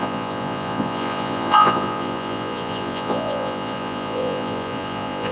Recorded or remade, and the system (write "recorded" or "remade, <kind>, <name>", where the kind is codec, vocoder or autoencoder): remade, vocoder, Vocos